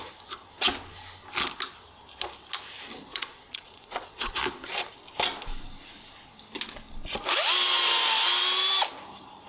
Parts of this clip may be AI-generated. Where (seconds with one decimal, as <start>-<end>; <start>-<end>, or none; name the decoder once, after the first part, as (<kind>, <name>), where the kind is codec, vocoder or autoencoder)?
3.1-4.4 (vocoder, Vocos)